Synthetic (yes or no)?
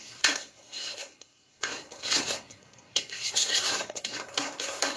yes